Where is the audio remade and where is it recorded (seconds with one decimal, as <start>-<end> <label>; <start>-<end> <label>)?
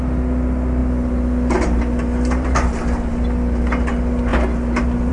0.0-5.1 recorded